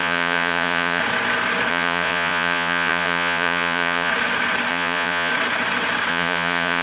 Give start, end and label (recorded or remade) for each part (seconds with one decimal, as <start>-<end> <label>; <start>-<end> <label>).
0.0-1.0 remade; 1.0-1.7 recorded; 1.7-4.1 remade; 4.1-4.7 recorded; 4.7-5.3 remade; 5.3-6.1 recorded; 6.1-6.8 remade

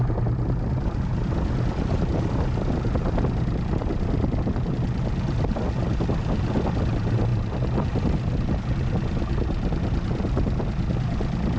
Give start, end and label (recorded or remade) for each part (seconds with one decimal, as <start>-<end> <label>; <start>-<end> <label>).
0.0-11.6 recorded

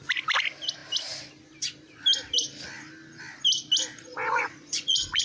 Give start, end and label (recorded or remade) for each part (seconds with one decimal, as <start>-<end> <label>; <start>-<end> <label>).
0.0-4.1 recorded; 4.1-5.2 remade

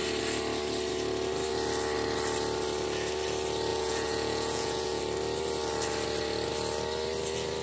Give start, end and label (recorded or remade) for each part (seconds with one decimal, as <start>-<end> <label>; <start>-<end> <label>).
0.0-3.7 recorded; 3.7-5.0 remade; 5.0-7.6 recorded

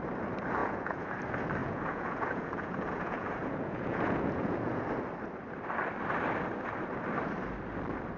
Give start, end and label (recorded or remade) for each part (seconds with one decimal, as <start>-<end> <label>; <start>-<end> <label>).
0.0-0.6 recorded; 0.6-1.2 remade; 1.2-1.6 recorded; 1.6-4.8 remade; 4.8-8.2 recorded

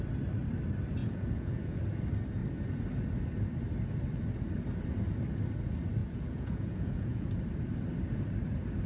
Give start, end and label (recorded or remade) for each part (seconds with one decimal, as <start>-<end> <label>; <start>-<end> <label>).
0.0-1.0 recorded; 1.0-1.8 remade; 1.8-6.0 recorded; 6.0-7.4 remade; 7.4-8.9 recorded